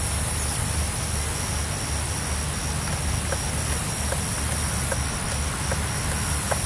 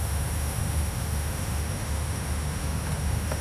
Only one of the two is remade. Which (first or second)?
second